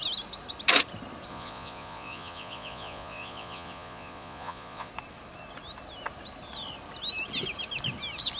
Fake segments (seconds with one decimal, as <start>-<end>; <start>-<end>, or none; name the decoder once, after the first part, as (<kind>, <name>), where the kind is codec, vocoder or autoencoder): 1.3-4.9 (vocoder, Vocos)